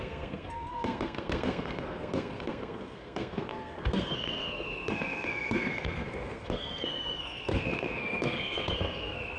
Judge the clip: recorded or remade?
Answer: remade